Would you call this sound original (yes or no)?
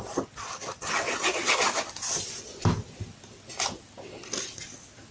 yes